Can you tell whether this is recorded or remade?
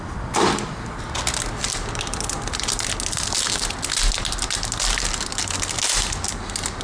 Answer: recorded